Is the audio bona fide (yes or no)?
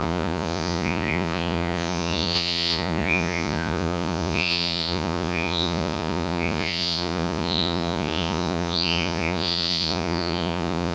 no